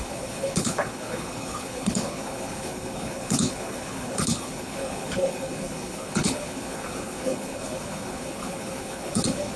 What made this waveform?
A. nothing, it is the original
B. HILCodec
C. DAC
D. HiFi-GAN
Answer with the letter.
B